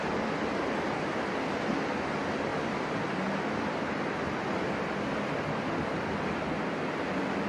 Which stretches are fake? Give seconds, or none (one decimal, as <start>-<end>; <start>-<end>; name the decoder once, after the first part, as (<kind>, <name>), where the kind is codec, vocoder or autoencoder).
none